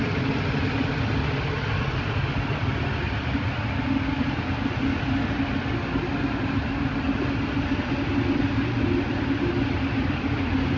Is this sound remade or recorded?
recorded